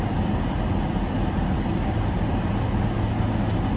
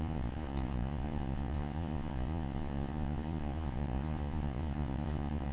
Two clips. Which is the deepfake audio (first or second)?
second